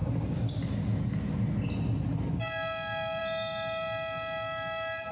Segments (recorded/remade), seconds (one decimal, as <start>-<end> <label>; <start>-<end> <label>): 0.0-5.1 recorded

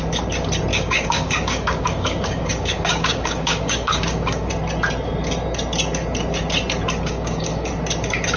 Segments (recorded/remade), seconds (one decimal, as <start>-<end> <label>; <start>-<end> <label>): 0.0-0.7 recorded; 0.7-4.5 remade; 4.5-7.0 recorded; 7.0-7.7 remade; 7.7-8.4 recorded

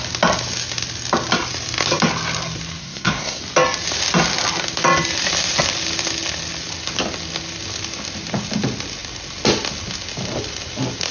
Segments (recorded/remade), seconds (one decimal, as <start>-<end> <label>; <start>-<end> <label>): 0.0-2.8 recorded; 2.8-3.4 remade; 3.4-11.1 recorded

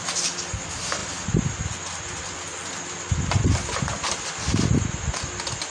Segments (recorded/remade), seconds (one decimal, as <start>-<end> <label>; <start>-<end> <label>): 0.0-5.7 recorded

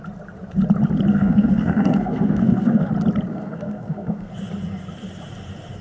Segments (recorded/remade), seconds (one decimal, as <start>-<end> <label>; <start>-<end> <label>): 0.0-1.1 recorded; 1.1-2.9 remade; 2.9-3.3 recorded; 3.3-4.3 remade; 4.3-5.8 recorded

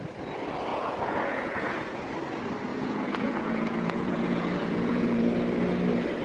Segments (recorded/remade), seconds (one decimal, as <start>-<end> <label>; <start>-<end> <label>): 0.0-0.7 recorded; 0.7-2.1 remade; 2.1-2.7 recorded; 2.7-5.2 remade; 5.2-6.2 recorded